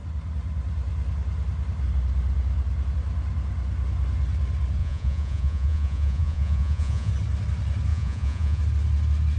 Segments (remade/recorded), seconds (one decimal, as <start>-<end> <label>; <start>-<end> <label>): 0.0-4.8 recorded; 4.8-7.1 remade; 7.1-7.9 recorded; 7.9-8.6 remade; 8.6-9.4 recorded